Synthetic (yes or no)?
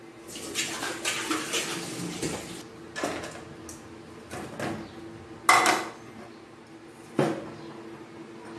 no